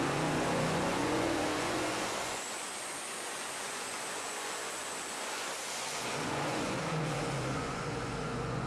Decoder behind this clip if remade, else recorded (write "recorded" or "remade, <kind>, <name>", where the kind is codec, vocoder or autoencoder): remade, vocoder, Vocos